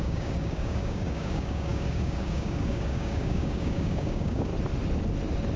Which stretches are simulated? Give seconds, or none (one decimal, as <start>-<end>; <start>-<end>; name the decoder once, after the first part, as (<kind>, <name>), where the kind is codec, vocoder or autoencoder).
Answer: 0.0-4.5 (codec, DAC)